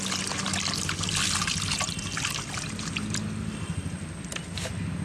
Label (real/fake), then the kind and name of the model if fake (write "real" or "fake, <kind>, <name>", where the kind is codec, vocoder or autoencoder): real